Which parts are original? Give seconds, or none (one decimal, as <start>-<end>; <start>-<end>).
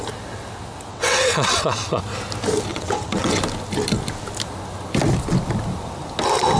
0.0-0.9; 2.0-2.7; 3.4-6.6